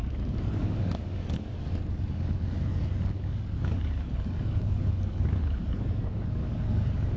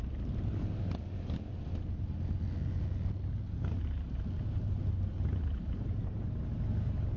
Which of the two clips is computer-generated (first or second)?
first